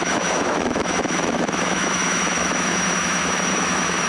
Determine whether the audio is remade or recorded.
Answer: remade